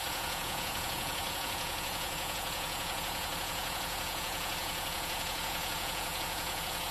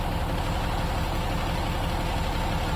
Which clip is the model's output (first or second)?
first